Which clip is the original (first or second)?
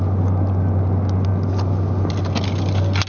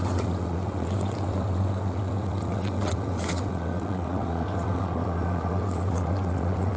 first